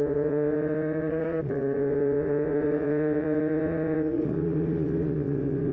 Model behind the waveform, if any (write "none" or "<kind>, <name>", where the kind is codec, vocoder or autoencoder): vocoder, Vocos